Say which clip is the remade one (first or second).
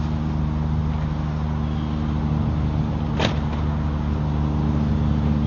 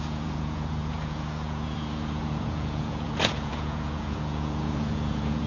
second